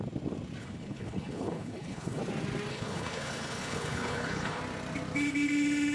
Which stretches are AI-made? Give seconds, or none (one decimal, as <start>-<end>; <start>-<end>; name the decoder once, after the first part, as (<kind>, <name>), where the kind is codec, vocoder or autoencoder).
0.6-2.2 (codec, HILCodec); 2.7-4.6

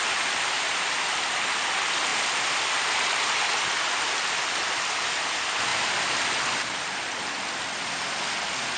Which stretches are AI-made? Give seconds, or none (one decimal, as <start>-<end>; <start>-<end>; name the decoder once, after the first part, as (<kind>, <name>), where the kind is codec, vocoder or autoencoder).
none

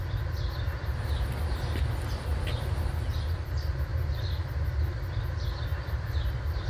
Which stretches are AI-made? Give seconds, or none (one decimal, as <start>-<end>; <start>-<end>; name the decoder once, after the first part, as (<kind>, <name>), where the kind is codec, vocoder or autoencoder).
2.3-2.9 (vocoder, BigVGAN v2); 3.9-4.6; 5.7-6.7

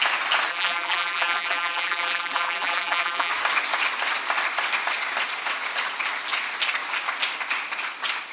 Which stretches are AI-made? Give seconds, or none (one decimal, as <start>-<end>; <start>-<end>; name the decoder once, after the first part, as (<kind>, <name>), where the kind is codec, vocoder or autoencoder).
0.5-3.3 (vocoder, BigVGAN v2)

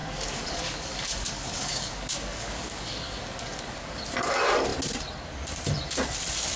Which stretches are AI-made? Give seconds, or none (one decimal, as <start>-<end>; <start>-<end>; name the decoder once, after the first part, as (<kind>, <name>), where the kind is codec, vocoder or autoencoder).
0.0-4.0 (codec, DAC)

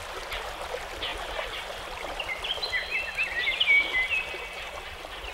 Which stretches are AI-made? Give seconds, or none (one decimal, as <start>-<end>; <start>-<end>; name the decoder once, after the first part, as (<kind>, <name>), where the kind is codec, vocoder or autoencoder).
1.1-2.3 (vocoder, BigVGAN v2)